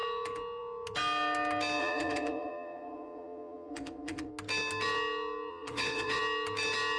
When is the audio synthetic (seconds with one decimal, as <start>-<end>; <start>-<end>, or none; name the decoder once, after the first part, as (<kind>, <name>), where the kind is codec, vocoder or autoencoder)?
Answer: 1.8-4.3 (vocoder, Vocos); 5.5-6.2